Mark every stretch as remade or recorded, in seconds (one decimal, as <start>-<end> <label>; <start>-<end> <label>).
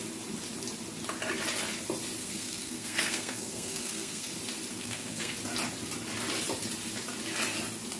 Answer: 0.0-2.2 recorded; 2.2-4.3 remade; 4.3-4.7 recorded; 4.7-5.3 remade; 5.3-8.0 recorded